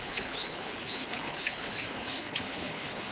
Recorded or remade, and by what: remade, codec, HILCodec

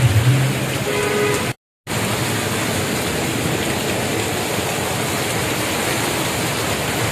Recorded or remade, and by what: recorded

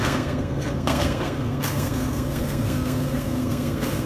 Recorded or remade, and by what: remade, codec, SNAC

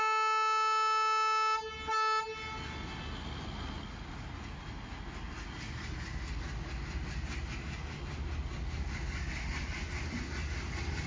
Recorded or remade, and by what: recorded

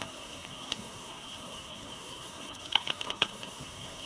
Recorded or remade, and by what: remade, codec, SNAC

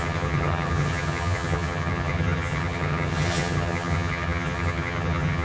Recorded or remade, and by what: remade, vocoder, HiFi-GAN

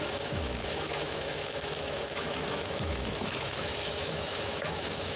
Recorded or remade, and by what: remade, autoencoder, DAC-VAE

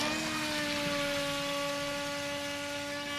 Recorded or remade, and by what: recorded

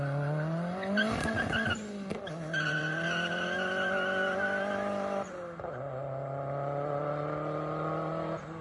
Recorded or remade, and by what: recorded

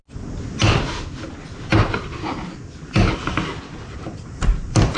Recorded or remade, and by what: recorded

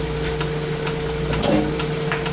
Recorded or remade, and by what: recorded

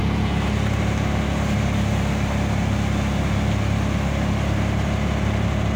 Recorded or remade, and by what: recorded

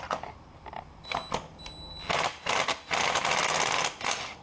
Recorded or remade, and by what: recorded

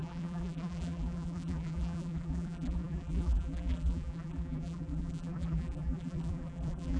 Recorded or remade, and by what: remade, vocoder, BigVGAN v2